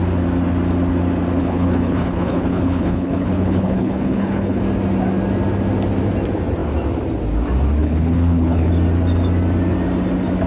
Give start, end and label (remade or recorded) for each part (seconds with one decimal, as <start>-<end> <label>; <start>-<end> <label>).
0.0-1.4 recorded; 1.4-4.6 remade; 4.6-7.8 recorded; 7.8-8.7 remade; 8.7-10.5 recorded